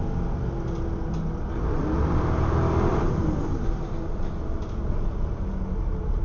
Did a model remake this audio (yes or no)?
no